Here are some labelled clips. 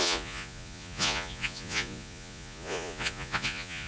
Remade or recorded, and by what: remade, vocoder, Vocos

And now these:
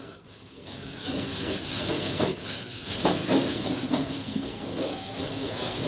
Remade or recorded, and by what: remade, codec, SNAC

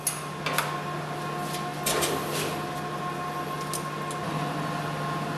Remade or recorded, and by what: recorded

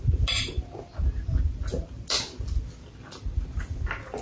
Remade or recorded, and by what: recorded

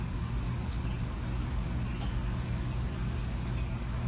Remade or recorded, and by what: remade, codec, DAC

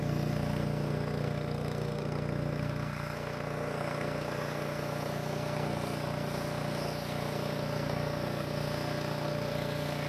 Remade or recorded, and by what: remade, codec, SNAC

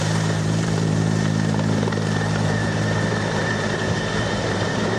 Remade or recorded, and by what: remade, vocoder, BigVGAN v2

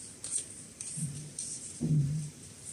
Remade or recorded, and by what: remade, vocoder, BigVGAN v2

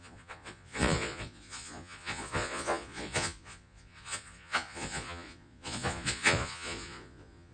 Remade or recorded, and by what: remade, vocoder, Vocos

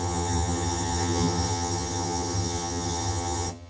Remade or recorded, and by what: remade, vocoder, HiFi-GAN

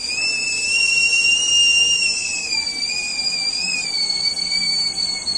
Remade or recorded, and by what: recorded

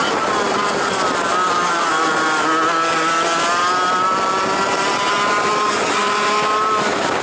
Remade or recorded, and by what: recorded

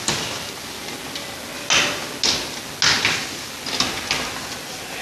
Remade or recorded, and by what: recorded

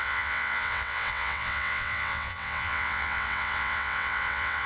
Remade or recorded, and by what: remade, vocoder, WaveNeXt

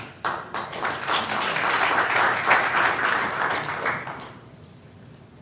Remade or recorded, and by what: recorded